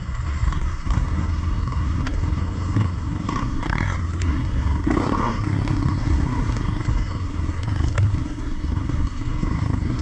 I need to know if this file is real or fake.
fake